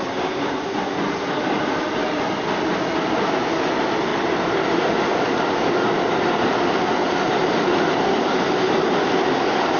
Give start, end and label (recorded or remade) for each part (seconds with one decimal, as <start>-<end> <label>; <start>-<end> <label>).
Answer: 0.0-9.8 recorded